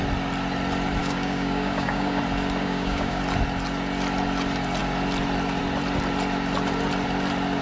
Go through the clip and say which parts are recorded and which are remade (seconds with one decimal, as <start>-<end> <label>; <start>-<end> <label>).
0.0-1.0 recorded; 1.0-2.2 remade; 2.2-2.6 recorded; 2.6-3.2 remade; 3.2-7.6 recorded